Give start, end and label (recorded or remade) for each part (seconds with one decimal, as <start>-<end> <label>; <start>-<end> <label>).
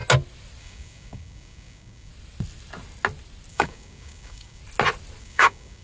0.0-0.6 recorded; 0.6-2.1 remade; 2.1-3.5 recorded; 3.5-4.6 remade; 4.6-5.2 recorded; 5.2-5.8 remade